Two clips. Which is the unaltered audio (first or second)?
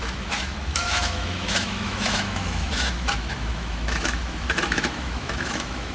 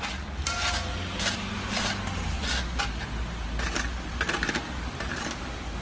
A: second